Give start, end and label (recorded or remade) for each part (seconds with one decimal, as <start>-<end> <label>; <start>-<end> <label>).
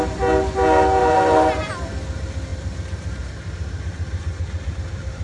0.0-1.0 recorded; 1.0-1.7 remade; 1.7-2.5 recorded; 2.5-4.7 remade; 4.7-5.2 recorded